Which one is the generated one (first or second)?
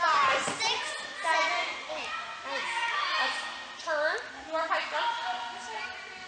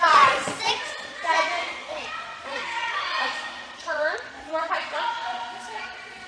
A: second